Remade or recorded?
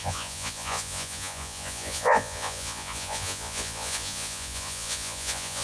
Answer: remade